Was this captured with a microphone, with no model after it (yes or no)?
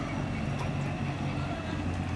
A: yes